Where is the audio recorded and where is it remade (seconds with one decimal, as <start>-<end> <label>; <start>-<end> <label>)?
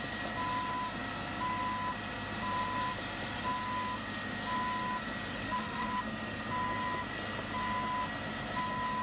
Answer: 0.0-5.4 recorded; 5.4-6.0 remade; 6.0-9.0 recorded